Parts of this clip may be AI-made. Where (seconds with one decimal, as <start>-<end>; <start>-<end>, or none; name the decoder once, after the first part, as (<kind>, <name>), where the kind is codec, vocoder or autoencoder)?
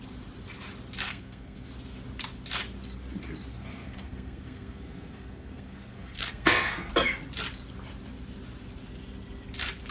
1.1-1.7 (codec, SNAC); 3.5-6.9